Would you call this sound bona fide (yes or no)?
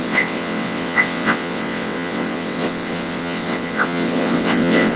no